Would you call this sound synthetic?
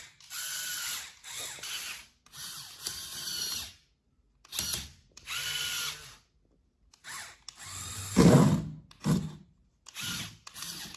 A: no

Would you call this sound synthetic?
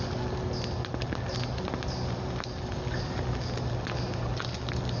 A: no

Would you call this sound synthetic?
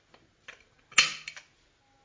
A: no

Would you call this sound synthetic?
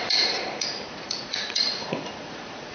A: yes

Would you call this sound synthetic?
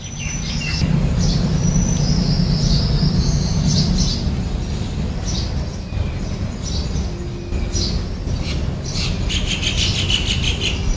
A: no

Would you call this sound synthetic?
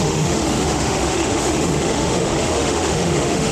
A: yes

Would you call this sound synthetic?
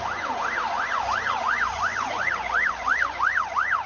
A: yes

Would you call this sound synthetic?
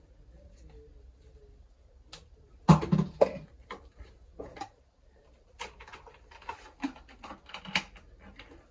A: no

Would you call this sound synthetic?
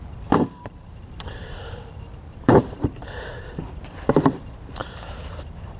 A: yes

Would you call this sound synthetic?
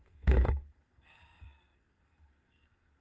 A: yes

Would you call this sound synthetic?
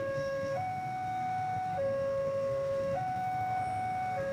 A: yes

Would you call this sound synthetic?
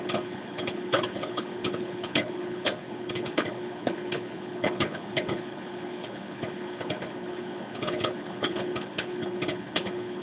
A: yes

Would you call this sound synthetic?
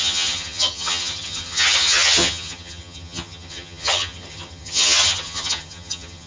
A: yes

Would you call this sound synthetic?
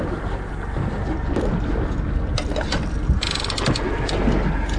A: no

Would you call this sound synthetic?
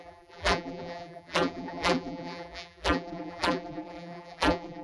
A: yes